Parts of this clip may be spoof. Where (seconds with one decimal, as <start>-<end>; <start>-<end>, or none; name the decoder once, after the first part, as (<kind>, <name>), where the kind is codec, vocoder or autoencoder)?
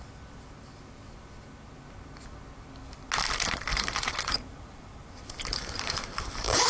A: 3.7-6.7 (vocoder, BigVGAN v2)